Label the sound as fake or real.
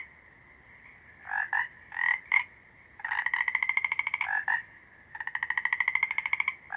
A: real